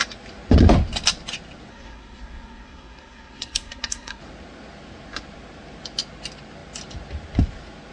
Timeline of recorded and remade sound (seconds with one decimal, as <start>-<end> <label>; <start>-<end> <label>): 0.0-1.7 recorded; 1.7-4.2 remade; 4.2-7.9 recorded